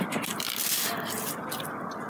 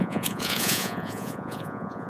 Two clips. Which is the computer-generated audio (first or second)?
second